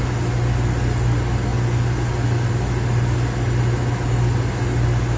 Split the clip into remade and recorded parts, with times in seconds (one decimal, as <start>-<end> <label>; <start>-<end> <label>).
0.0-5.2 recorded